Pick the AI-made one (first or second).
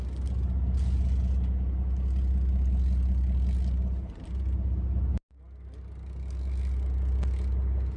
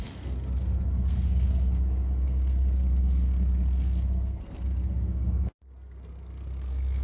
second